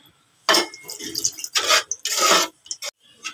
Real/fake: real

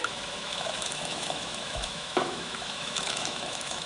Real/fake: fake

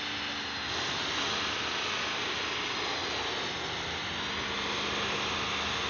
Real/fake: real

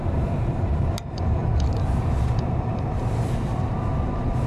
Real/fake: fake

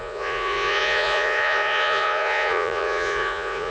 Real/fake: fake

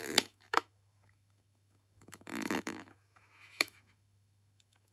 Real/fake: fake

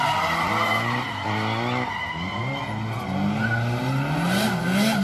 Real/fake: real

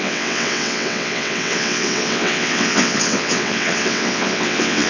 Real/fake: fake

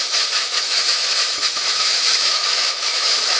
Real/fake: fake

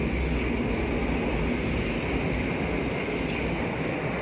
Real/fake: real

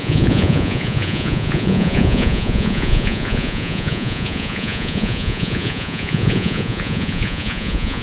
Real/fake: fake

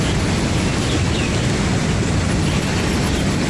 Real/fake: real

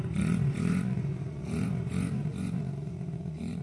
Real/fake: fake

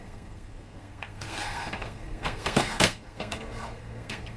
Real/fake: fake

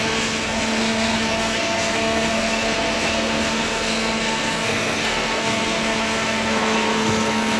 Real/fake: fake